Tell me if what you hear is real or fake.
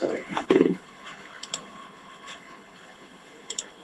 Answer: fake